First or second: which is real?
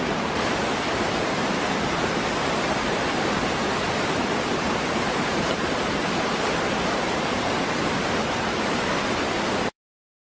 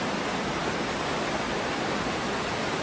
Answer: second